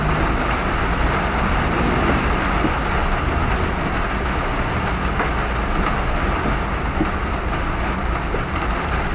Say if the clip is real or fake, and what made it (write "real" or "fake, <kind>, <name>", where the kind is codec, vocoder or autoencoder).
real